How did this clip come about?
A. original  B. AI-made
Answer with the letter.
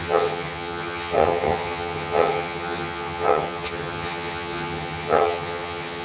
B